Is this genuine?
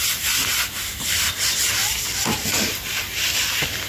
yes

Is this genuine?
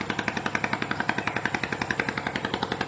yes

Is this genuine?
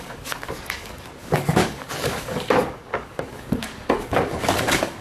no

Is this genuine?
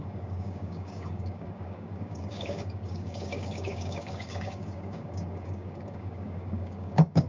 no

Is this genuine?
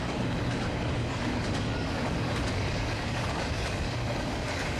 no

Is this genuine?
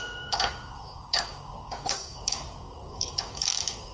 no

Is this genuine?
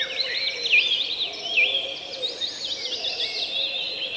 yes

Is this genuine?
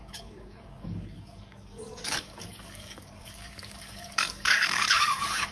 no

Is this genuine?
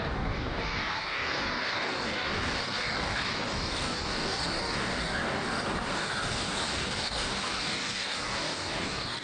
no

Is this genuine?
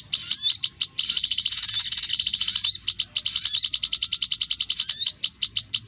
yes